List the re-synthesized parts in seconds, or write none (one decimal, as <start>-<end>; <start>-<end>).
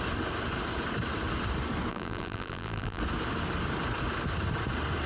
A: 1.9-3.0